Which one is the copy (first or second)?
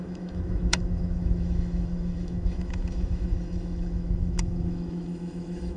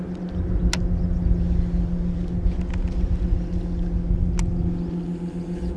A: first